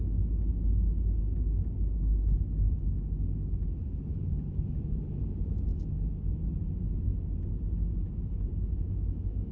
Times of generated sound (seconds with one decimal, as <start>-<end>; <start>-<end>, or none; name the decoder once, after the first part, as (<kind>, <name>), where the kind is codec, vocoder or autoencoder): 4.1-4.8 (autoencoder, DAC-VAE); 5.7-6.4; 8.8-9.5